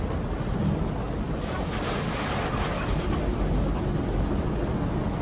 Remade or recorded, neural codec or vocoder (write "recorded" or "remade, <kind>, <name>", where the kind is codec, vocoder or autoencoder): recorded